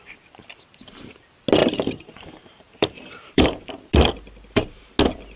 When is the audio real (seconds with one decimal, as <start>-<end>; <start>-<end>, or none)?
0.0-1.6; 3.7-5.4